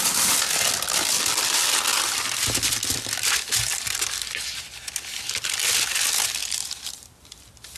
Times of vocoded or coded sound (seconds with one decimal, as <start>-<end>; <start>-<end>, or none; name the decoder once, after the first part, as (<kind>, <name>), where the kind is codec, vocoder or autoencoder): 1.9-4.6 (vocoder, BigVGAN v2); 6.4-7.8